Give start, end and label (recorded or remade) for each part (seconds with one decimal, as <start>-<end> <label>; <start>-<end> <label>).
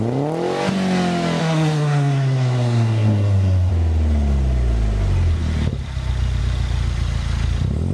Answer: 0.0-1.4 recorded; 1.4-3.7 remade; 3.7-7.9 recorded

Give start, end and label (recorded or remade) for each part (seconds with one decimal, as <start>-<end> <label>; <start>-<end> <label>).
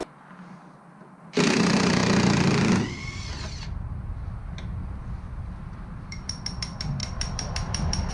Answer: 0.0-1.2 recorded; 1.2-2.0 remade; 2.0-6.0 recorded; 6.0-8.1 remade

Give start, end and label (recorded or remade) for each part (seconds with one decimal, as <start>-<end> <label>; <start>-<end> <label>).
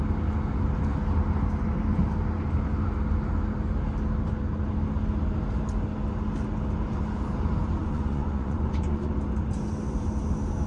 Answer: 0.0-7.8 recorded; 7.8-9.1 remade; 9.1-10.7 recorded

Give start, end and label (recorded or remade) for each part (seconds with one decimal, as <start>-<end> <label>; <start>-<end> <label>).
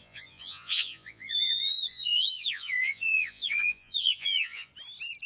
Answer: 0.0-4.7 remade; 4.7-5.3 recorded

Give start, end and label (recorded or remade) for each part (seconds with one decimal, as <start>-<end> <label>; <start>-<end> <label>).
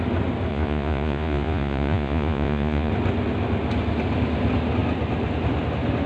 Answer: 0.0-0.5 recorded; 0.5-2.9 remade; 2.9-6.1 recorded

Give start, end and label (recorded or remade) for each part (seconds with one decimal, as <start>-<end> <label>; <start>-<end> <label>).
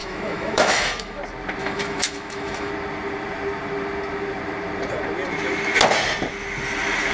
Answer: 0.0-1.2 remade; 1.2-1.6 recorded; 1.6-2.7 remade; 2.7-7.1 recorded